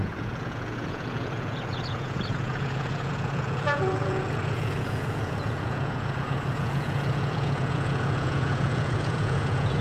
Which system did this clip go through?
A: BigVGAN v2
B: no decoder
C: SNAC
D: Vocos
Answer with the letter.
D